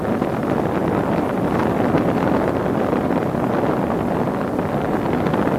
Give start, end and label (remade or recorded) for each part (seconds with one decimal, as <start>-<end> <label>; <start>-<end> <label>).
0.0-5.6 recorded